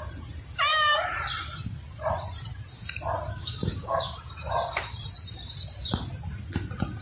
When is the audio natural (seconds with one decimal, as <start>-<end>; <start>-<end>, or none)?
0.0-3.3; 4.0-7.0

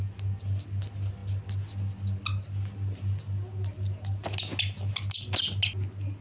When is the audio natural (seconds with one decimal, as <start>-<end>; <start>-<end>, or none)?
0.0-6.2

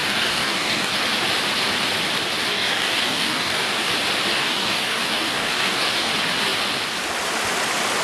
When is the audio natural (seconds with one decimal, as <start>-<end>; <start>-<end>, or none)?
0.9-2.5; 3.9-4.3; 6.1-8.0

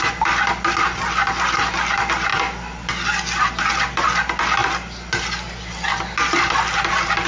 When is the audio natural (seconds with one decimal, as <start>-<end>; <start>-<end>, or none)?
0.0-7.3

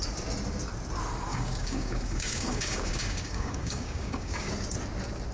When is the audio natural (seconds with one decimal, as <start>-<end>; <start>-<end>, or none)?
0.0-1.3; 4.5-5.3

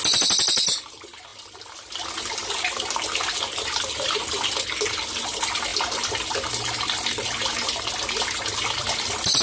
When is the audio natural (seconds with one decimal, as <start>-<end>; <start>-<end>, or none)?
0.0-9.4

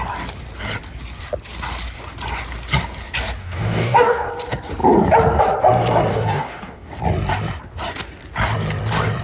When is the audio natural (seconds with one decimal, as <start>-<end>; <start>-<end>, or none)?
0.0-3.4; 4.3-6.1; 6.9-9.2